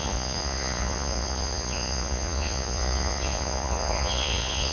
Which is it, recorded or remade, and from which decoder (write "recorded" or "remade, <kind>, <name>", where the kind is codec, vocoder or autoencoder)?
remade, vocoder, Vocos